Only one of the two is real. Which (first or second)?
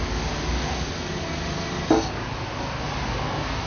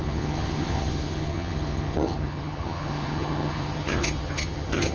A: first